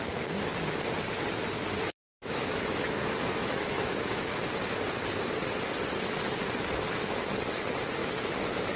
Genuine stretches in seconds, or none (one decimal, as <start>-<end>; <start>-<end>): 0.0-1.9; 4.4-8.0